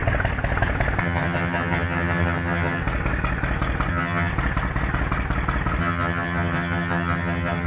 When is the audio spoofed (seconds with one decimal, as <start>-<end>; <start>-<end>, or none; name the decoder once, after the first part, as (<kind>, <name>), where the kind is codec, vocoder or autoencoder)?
1.0-2.8 (vocoder, HiFi-GAN); 3.9-4.3; 5.8-7.7